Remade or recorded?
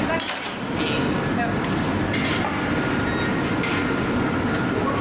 recorded